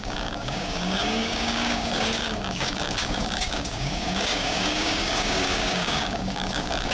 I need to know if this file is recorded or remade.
remade